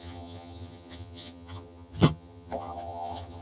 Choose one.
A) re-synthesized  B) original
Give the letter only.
A